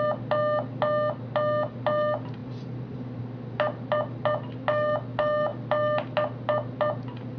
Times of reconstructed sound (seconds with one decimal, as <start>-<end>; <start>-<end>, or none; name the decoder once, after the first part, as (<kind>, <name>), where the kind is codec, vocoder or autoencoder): 2.4-3.2 (vocoder, BigVGAN v2)